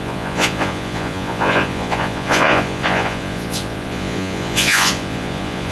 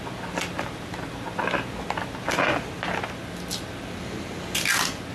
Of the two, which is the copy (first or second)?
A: first